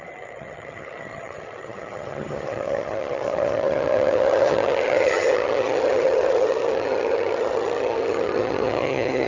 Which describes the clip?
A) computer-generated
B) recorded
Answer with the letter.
A